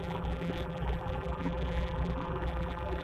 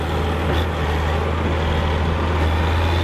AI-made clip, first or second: first